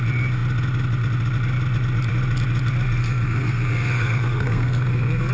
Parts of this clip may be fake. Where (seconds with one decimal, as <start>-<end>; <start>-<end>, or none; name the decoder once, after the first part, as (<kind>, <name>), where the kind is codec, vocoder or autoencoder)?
3.0-5.3 (codec, SNAC)